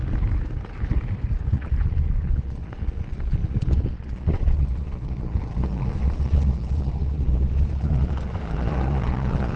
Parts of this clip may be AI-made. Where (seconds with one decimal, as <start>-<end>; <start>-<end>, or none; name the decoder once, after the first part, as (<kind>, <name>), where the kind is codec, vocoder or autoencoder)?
1.5-9.6 (vocoder, Vocos)